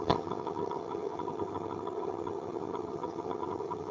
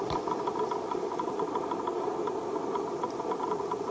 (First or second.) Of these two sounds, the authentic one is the second